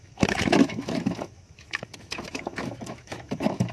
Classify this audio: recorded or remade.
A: remade